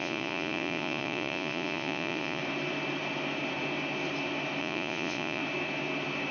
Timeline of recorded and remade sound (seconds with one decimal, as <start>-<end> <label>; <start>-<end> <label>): 0.0-2.4 remade; 2.4-4.6 recorded; 4.6-5.4 remade; 5.4-6.3 recorded